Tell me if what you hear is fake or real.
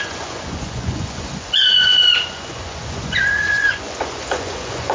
fake